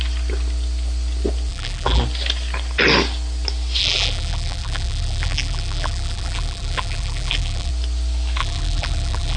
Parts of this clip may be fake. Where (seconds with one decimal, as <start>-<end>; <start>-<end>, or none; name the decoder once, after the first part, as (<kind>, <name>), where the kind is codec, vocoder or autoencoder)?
1.5-2.0 (vocoder, BigVGAN v2); 3.8-7.7; 8.4-9.4